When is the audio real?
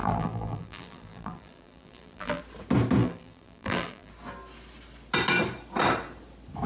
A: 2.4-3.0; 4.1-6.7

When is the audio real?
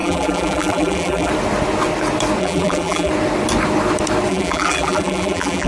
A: 1.3-2.4; 3.1-4.3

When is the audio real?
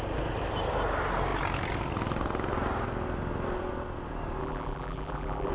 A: 0.0-4.4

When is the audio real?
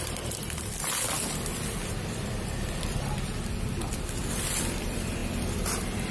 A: none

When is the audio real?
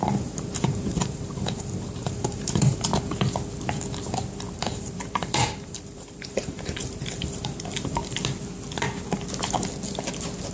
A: 2.9-4.5; 8.0-10.5